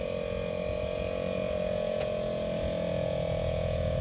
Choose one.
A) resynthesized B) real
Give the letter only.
A